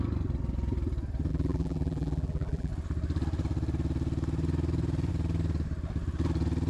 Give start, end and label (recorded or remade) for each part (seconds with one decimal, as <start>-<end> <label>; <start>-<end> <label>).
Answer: 0.0-1.3 recorded; 1.3-2.7 remade; 2.7-6.7 recorded